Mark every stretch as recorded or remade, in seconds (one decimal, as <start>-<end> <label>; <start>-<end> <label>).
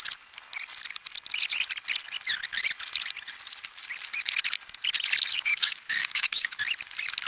0.0-5.3 recorded; 5.3-6.6 remade; 6.6-7.3 recorded